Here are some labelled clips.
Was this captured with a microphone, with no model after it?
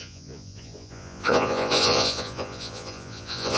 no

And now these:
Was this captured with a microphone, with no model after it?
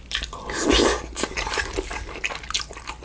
yes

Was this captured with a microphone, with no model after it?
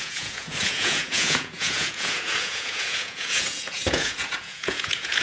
no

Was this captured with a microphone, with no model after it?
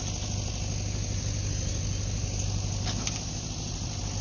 yes